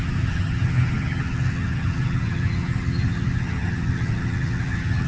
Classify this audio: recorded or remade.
remade